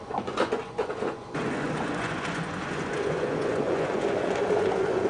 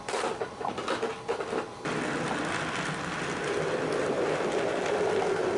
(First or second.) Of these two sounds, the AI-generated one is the first